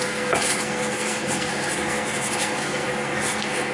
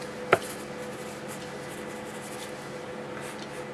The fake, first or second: first